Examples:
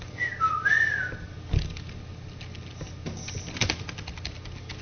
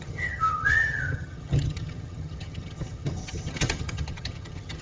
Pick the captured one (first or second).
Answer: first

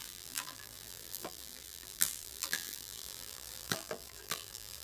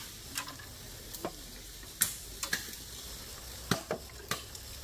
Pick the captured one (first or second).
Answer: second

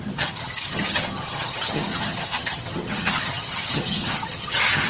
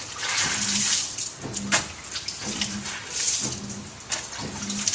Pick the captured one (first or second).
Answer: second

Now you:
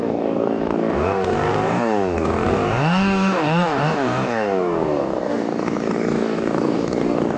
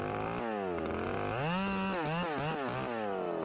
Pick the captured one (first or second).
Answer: second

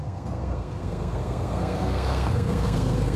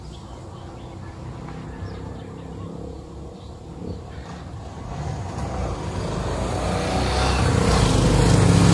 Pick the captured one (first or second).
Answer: second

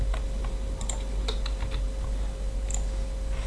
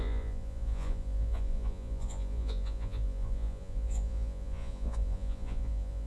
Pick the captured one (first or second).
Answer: first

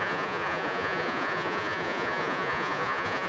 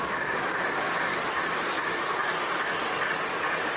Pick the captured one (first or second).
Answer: second